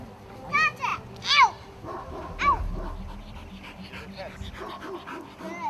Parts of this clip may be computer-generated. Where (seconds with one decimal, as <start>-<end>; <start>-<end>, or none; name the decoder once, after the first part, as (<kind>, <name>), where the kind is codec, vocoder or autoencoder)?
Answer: none